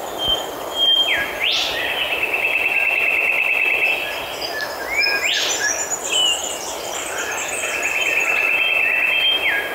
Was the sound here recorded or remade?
recorded